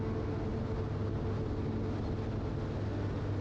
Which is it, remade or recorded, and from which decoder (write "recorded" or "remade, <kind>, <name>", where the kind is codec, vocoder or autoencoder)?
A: recorded